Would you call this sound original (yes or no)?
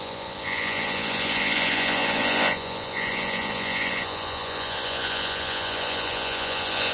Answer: no